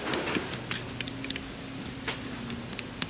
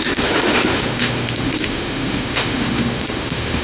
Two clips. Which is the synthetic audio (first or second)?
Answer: second